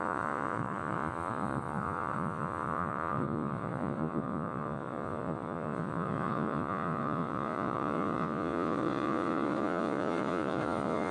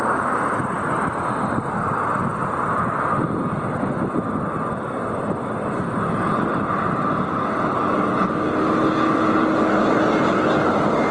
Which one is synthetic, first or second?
first